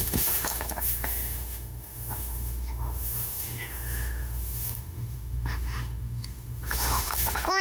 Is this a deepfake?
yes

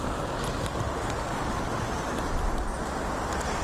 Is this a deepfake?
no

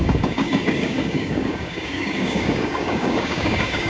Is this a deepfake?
yes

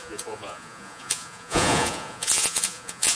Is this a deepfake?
yes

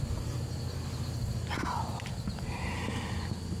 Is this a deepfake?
no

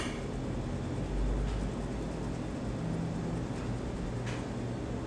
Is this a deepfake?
no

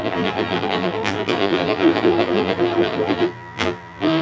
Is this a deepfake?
yes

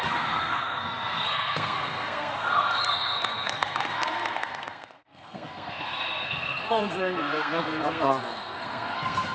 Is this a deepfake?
yes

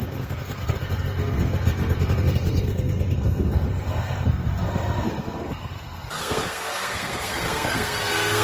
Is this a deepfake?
yes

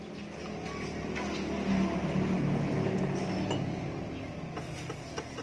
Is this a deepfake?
no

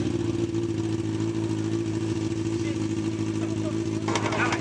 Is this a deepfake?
no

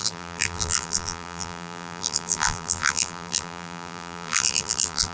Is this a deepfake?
yes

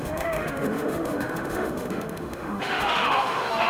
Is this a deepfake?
yes